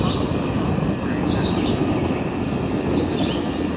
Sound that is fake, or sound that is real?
real